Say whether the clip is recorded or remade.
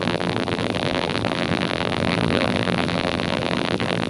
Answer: remade